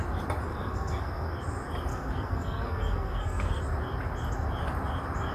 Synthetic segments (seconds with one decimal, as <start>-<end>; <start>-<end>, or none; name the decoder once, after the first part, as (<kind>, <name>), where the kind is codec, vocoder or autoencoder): 0.5-1.3 (codec, SNAC); 1.9-3.6